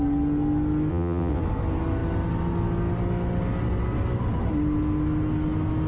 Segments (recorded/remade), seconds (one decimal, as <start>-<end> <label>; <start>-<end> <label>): 0.0-0.9 recorded; 0.9-1.4 remade; 1.4-5.9 recorded

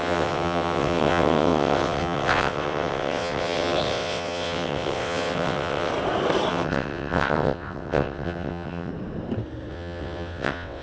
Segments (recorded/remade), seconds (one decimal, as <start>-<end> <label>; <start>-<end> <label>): 0.0-5.9 remade; 5.9-6.5 recorded; 6.5-8.9 remade; 8.9-9.7 recorded; 9.7-10.8 remade

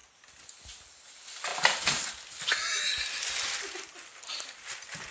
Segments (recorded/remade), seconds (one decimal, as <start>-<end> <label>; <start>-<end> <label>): 0.0-5.1 recorded

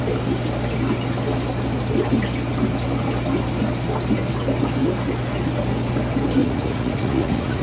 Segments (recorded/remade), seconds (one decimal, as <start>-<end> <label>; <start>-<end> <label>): 0.0-6.4 recorded; 6.4-7.6 remade

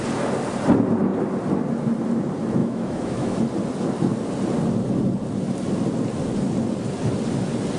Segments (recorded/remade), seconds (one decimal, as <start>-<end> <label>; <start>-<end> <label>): 0.0-2.6 recorded; 2.6-3.4 remade; 3.4-7.8 recorded

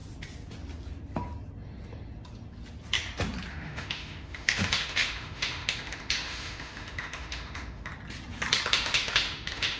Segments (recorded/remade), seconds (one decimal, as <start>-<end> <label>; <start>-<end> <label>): 0.0-3.5 recorded; 3.5-7.9 remade; 7.9-8.7 recorded; 8.7-9.8 remade

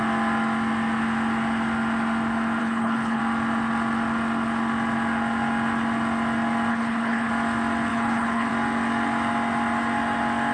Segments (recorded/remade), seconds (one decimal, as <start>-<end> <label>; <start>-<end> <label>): 0.0-2.6 recorded; 2.6-3.2 remade; 3.2-6.7 recorded; 6.7-7.3 remade; 7.3-7.9 recorded; 7.9-8.5 remade; 8.5-10.5 recorded

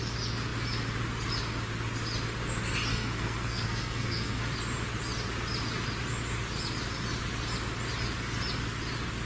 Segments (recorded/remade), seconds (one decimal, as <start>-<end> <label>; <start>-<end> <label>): 0.0-2.9 recorded; 2.9-4.4 remade; 4.4-9.3 recorded